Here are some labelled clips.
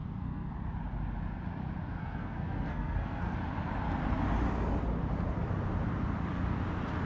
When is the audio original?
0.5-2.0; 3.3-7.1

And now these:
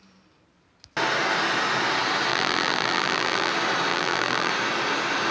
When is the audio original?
0.0-2.3; 3.5-3.9; 4.5-5.3

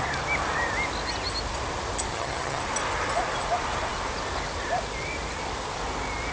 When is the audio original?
0.0-2.1; 2.6-6.3

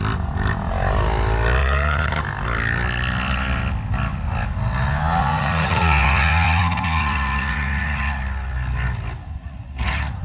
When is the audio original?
0.0-1.6; 2.1-5.2; 8.2-9.4

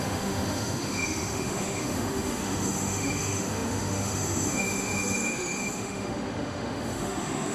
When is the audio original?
none

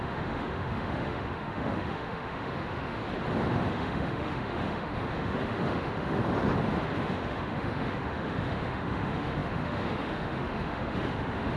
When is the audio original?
3.0-3.7; 6.2-7.0

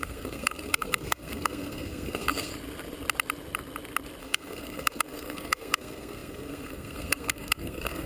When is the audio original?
2.5-4.2

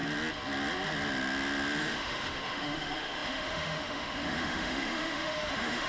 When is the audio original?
0.0-1.8